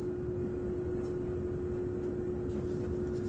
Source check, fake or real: real